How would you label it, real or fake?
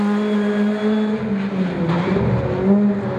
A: real